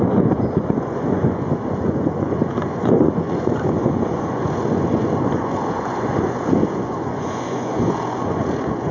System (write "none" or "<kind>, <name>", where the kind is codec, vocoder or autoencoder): vocoder, Vocos